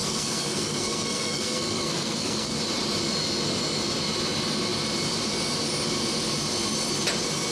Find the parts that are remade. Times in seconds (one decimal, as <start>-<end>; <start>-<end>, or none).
0.0-2.6